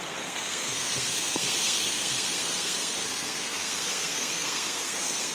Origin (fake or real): fake